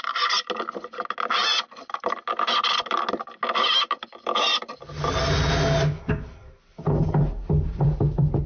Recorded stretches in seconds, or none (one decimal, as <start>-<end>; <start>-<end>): 0.0-6.7